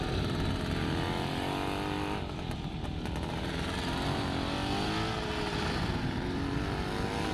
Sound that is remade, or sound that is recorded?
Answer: recorded